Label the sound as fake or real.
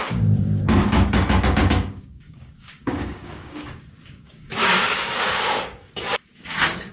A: fake